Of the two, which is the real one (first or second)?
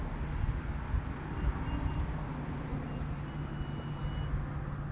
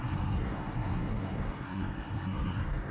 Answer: first